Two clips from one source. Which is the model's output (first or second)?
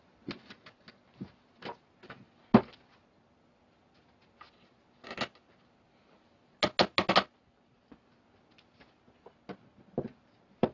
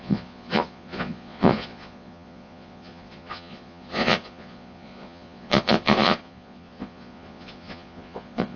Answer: second